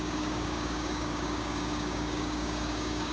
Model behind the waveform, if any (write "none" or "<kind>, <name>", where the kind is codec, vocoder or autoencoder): codec, DAC